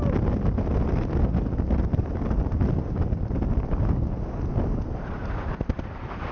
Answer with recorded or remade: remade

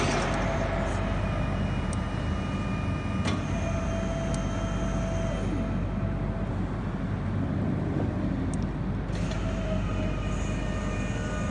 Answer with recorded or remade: recorded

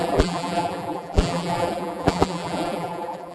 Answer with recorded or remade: remade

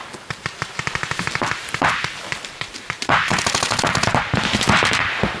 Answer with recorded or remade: remade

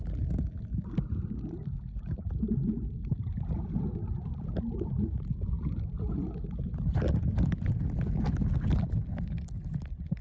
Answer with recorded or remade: recorded